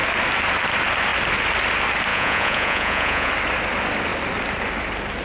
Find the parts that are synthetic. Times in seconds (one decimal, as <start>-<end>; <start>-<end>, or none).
2.1-3.3